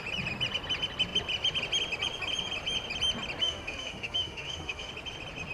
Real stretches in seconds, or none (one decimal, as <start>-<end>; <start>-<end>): 0.0-3.4; 4.9-5.5